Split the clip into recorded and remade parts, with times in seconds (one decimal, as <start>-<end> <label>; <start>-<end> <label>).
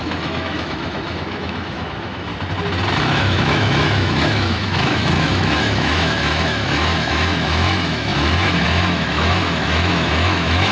0.0-2.3 remade; 2.3-3.0 recorded; 3.0-10.7 remade